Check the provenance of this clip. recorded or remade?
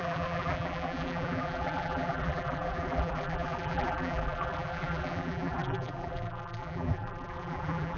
remade